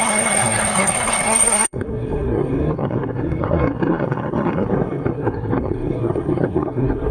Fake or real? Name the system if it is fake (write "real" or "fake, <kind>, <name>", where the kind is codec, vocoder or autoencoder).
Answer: fake, codec, SNAC